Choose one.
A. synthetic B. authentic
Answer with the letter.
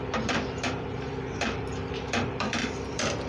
A